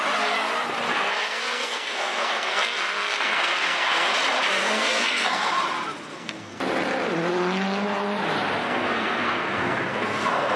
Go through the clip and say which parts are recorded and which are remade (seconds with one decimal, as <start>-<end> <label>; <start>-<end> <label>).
0.0-0.9 recorded; 0.9-4.1 remade; 4.1-4.6 recorded; 4.6-5.5 remade; 5.5-6.1 recorded; 6.1-6.6 remade; 6.6-8.6 recorded; 8.6-10.6 remade